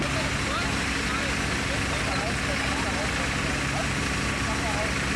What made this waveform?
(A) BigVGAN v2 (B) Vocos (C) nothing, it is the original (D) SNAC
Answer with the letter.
C